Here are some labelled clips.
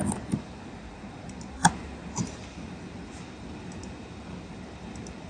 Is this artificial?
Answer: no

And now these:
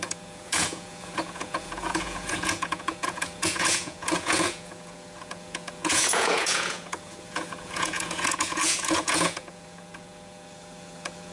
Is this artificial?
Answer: yes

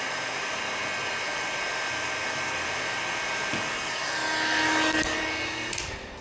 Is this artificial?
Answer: no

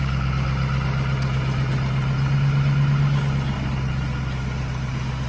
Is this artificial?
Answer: no